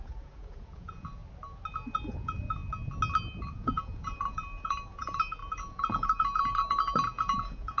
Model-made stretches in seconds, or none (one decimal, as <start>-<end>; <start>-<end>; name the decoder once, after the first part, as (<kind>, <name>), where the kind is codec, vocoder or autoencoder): 0.0-1.2 (vocoder, Vocos); 1.7-2.6; 3.5-7.8